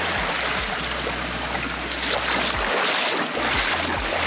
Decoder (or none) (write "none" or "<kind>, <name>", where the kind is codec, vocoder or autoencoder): none